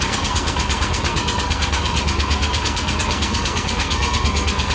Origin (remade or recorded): remade